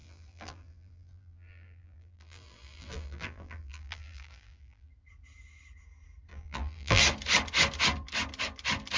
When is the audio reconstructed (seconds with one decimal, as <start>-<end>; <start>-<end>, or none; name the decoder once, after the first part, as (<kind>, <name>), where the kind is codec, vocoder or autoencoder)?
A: 0.0-4.9 (vocoder, BigVGAN v2); 6.3-7.0